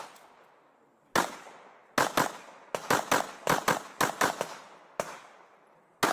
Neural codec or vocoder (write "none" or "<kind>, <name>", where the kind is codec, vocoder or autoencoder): none